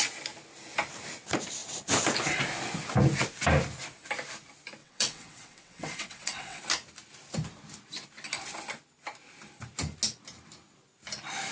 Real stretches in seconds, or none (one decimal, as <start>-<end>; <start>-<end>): 0.0-4.8; 6.6-11.5